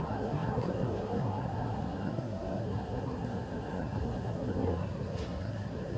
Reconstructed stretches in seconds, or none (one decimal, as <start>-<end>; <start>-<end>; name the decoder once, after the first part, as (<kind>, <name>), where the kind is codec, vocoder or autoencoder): 0.0-6.0 (codec, SNAC)